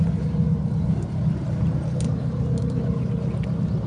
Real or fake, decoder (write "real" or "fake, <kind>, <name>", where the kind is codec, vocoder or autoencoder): real